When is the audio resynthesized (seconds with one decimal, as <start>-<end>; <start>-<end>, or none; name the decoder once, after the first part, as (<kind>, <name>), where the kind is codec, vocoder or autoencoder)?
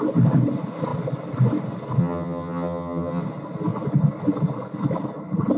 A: 2.0-3.2 (vocoder, HiFi-GAN)